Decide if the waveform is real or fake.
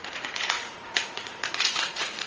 fake